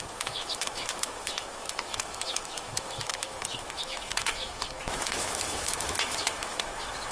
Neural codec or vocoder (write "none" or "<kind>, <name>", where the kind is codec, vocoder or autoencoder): autoencoder, DAC-VAE